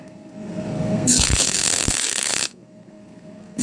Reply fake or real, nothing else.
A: fake